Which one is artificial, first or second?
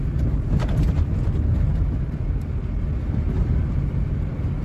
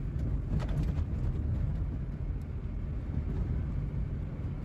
first